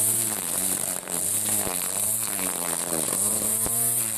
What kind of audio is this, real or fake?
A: fake